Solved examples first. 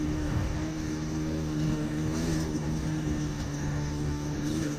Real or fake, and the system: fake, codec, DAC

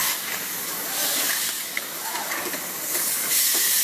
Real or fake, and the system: fake, codec, DAC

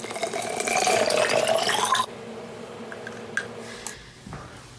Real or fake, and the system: real